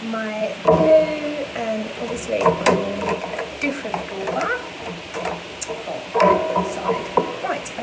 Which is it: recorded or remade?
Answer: recorded